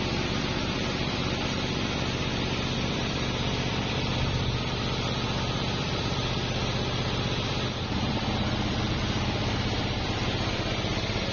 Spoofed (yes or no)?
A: yes